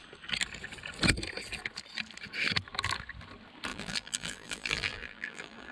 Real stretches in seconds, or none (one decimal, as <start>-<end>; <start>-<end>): 0.0-3.7